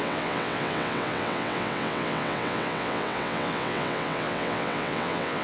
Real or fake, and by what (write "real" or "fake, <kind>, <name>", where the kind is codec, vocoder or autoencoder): fake, vocoder, WaveNeXt